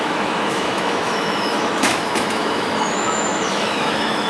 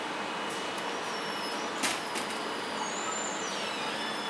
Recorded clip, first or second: second